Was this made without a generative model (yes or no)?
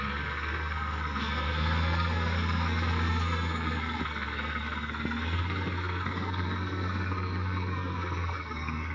no